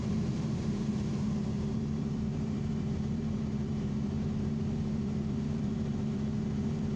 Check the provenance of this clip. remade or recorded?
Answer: remade